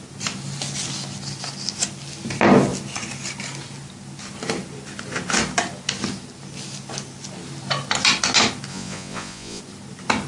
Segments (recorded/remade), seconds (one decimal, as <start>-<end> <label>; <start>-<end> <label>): 0.0-8.7 recorded; 8.7-9.6 remade; 9.6-10.3 recorded